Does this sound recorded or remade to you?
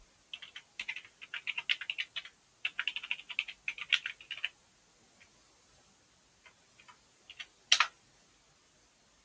recorded